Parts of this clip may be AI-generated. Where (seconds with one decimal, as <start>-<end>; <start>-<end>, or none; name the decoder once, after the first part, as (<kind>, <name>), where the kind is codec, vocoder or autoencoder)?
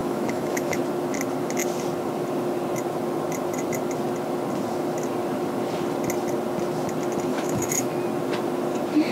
0.0-0.8 (autoencoder, DAC-VAE); 7.3-7.9